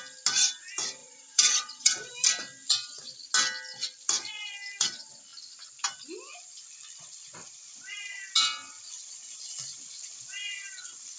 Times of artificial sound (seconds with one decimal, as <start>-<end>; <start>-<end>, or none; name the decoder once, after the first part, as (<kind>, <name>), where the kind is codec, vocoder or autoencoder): 1.0-2.1 (vocoder, Vocos)

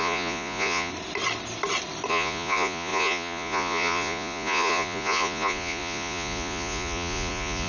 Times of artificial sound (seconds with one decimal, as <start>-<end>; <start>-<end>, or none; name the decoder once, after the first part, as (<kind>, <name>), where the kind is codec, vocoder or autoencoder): 0.0-0.9 (vocoder, Vocos); 2.1-7.7